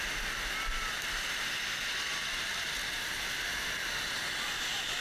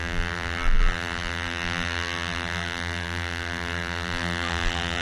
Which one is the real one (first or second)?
first